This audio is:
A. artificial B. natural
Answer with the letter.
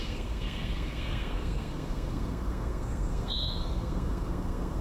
A